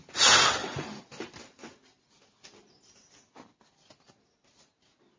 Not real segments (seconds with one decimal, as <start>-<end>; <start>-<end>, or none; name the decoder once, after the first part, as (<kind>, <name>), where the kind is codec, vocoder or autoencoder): 0.6-1.4 (vocoder, BigVGAN v2)